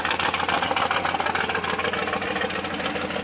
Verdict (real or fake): real